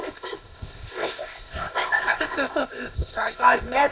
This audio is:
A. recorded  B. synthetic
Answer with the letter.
B